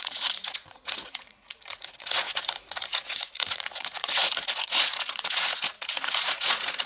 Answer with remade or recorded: remade